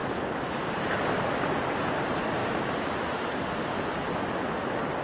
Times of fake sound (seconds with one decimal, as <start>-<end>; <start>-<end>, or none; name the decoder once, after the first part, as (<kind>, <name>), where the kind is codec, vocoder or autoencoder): 2.4-3.5 (autoencoder, DAC-VAE)